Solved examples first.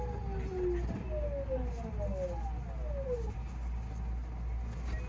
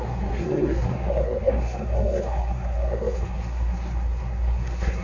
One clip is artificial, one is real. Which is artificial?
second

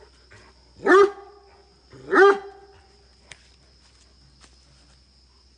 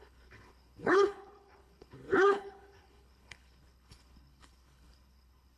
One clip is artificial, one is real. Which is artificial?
second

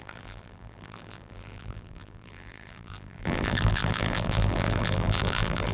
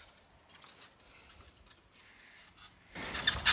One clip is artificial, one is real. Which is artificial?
first